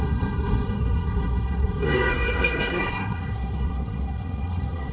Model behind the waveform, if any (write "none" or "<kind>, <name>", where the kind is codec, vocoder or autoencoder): codec, SNAC